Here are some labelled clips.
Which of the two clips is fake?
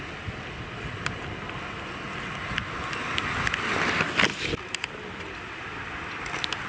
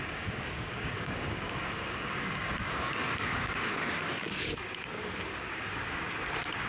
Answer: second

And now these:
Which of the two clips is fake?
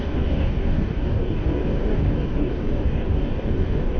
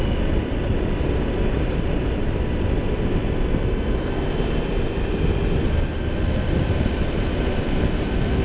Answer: first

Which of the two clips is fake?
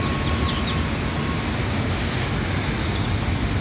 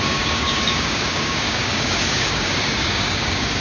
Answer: second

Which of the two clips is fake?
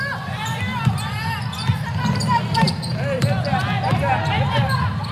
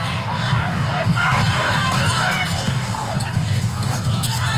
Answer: second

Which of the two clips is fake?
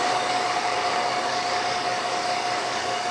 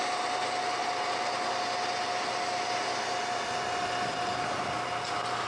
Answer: first